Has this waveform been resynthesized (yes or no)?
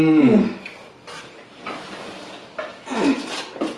no